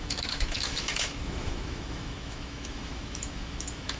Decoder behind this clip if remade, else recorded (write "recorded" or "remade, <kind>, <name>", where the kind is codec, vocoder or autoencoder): remade, autoencoder, DAC-VAE